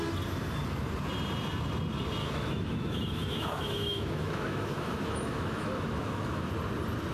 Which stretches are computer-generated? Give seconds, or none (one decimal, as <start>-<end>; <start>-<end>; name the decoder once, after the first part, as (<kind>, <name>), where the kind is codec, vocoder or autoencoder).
2.2-6.5 (autoencoder, DAC-VAE)